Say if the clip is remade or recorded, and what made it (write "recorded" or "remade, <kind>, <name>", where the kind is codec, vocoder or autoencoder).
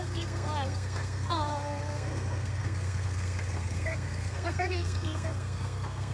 remade, codec, SNAC